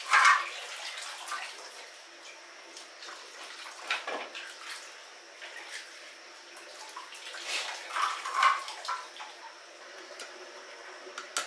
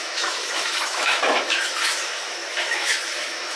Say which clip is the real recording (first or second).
first